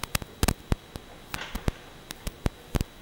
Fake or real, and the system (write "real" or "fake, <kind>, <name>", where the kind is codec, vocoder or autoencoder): real